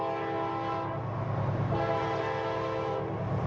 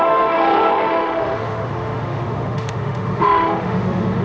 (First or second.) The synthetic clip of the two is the second